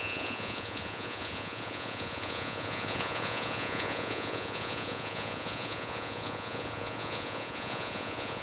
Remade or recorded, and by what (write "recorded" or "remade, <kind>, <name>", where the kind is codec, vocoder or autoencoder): remade, vocoder, Vocos